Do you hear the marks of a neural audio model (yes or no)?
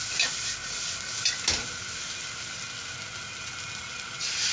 no